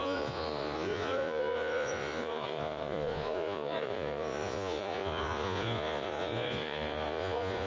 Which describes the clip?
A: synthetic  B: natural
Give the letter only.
A